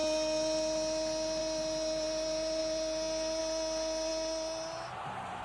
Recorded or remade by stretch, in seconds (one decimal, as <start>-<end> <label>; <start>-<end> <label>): 0.0-5.4 recorded